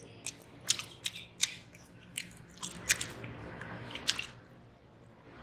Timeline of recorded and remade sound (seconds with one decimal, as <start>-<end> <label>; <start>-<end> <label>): 0.0-1.4 recorded; 1.4-2.5 remade; 2.5-3.4 recorded; 3.4-4.0 remade; 4.0-5.4 recorded